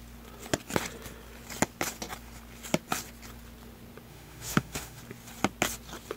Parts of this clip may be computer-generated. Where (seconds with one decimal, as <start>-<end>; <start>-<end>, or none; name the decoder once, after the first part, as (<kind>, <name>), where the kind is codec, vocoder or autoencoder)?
4.1-5.0 (autoencoder, DAC-VAE)

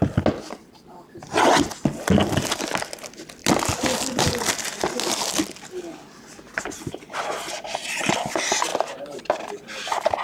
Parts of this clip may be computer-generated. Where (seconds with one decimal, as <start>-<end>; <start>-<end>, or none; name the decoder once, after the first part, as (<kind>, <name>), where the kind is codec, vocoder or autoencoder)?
8.7-9.2 (vocoder, BigVGAN v2)